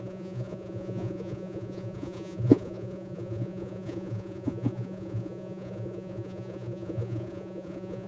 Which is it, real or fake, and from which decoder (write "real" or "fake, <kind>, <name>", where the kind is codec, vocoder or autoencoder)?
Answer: fake, vocoder, Vocos